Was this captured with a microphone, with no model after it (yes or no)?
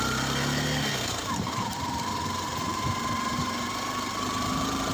no